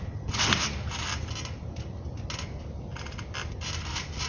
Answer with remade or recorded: recorded